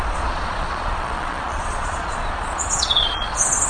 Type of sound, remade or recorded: remade